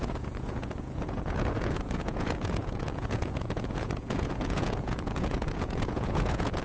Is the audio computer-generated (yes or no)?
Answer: yes